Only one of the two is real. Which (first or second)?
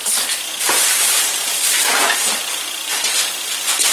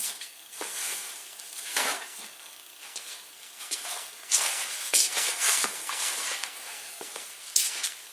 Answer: first